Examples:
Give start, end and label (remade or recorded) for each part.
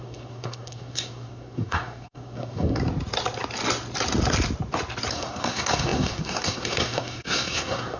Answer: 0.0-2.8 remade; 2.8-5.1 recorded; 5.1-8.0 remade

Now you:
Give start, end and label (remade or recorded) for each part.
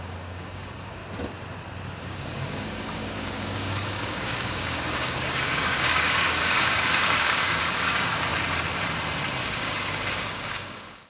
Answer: 0.0-1.0 remade; 1.0-2.0 recorded; 2.0-8.3 remade; 8.3-9.4 recorded; 9.4-11.1 remade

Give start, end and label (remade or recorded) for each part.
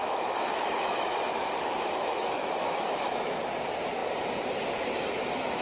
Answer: 0.0-3.4 remade; 3.4-5.6 recorded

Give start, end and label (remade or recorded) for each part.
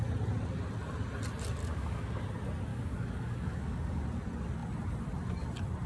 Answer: 0.0-1.6 recorded; 1.6-2.2 remade; 2.2-2.7 recorded; 2.7-4.0 remade; 4.0-5.9 recorded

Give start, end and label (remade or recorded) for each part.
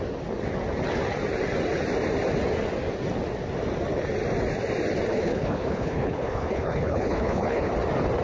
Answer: 0.0-5.1 recorded; 5.1-7.7 remade; 7.7-8.2 recorded